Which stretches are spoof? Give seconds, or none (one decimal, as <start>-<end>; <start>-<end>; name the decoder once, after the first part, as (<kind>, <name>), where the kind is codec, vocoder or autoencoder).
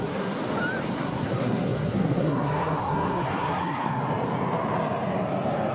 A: 0.0-0.4 (codec, SNAC); 0.9-4.0